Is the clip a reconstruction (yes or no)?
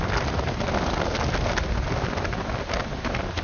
no